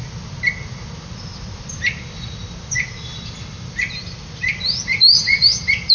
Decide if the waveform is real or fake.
real